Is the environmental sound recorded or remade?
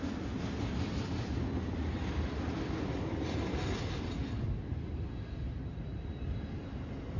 recorded